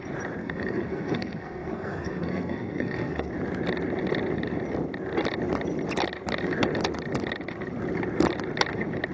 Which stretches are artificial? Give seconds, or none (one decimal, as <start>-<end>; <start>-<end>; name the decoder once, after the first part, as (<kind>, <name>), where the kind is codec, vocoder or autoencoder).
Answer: 0.4-3.3 (codec, SNAC)